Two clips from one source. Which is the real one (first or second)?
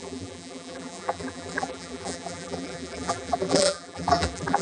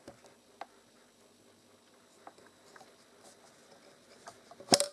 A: second